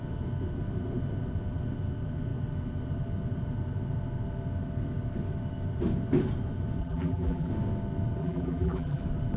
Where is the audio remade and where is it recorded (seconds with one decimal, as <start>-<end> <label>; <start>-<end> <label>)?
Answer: 0.0-6.8 recorded; 6.8-7.5 remade; 7.5-8.2 recorded; 8.2-9.0 remade; 9.0-9.4 recorded